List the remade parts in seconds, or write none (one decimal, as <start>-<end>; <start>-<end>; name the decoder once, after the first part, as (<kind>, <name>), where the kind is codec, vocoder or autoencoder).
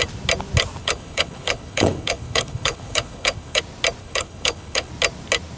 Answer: 0.8-3.6 (codec, HILCodec); 4.0-4.9